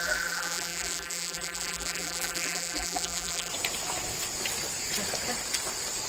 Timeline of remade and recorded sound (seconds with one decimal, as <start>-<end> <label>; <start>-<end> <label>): 0.0-3.5 remade; 3.5-6.1 recorded